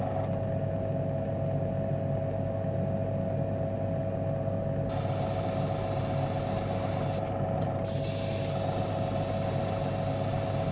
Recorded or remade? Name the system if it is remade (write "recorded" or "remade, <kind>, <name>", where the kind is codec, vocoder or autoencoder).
recorded